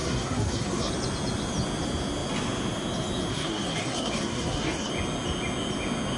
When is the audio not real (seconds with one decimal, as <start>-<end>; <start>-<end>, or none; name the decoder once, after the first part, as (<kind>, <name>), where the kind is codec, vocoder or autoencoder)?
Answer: 0.0-0.9 (codec, SNAC); 3.3-4.9